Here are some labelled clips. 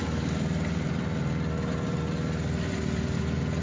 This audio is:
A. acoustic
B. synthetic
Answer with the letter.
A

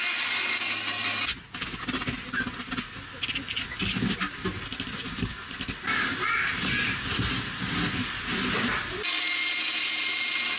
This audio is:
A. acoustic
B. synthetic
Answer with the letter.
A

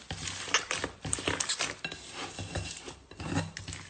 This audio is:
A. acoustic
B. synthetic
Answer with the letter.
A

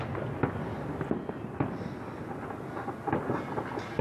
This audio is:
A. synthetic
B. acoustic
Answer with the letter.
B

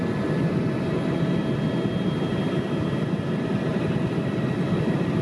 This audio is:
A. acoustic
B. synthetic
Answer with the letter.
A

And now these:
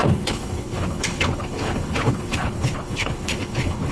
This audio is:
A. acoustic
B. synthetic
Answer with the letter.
B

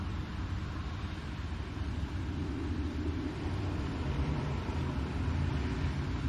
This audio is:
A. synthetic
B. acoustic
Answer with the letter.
A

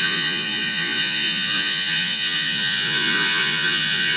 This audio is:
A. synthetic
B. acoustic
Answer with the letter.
A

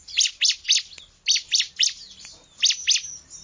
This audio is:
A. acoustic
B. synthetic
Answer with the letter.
A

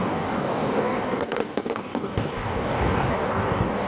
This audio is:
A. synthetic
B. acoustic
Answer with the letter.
A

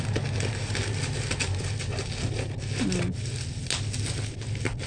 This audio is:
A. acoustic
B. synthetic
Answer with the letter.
A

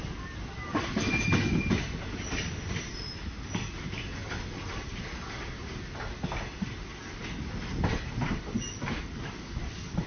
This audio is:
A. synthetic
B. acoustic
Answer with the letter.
B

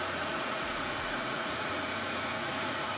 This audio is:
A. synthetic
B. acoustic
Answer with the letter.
A